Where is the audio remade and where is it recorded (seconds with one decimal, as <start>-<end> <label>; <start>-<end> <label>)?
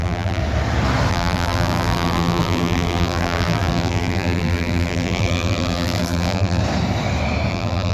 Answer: 0.0-0.4 remade; 0.4-1.1 recorded; 1.1-6.6 remade; 6.6-7.5 recorded; 7.5-7.9 remade